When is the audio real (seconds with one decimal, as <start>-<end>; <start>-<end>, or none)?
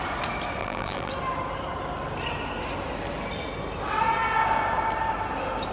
0.0-0.6; 1.1-5.7